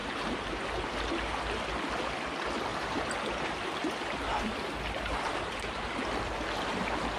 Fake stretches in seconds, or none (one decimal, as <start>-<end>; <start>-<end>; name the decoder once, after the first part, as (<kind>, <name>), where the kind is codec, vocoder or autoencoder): 0.0-1.1 (vocoder, BigVGAN v2); 2.7-6.0